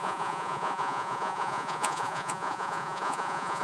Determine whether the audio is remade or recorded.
remade